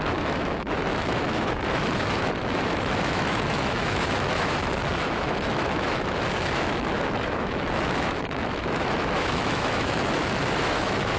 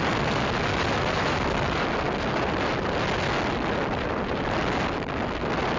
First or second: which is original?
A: second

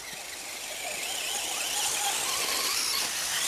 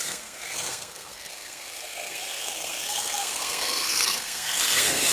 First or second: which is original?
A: first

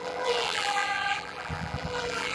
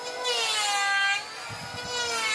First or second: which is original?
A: second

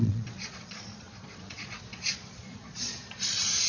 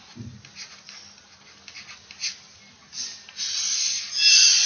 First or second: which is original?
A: second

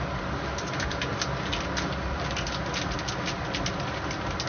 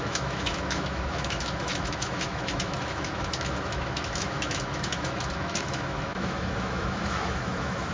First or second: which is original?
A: first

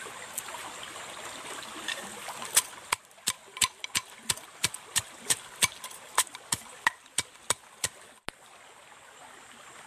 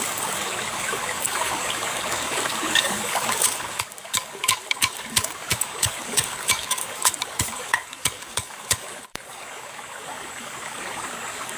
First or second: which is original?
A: first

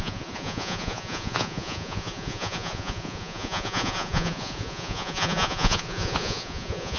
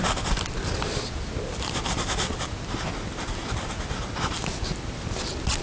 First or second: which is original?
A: second